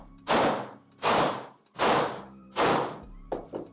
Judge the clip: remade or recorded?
remade